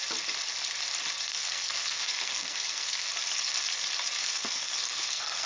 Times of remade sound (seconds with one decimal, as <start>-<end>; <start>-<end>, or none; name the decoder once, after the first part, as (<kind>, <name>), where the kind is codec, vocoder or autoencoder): 1.3-3.1 (codec, SNAC); 4.2-5.5